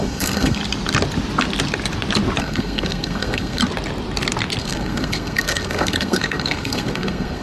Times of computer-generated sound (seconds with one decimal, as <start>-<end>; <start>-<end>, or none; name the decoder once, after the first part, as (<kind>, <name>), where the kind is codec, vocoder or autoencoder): 0.0-0.6 (codec, SNAC); 2.4-3.6; 4.6-7.4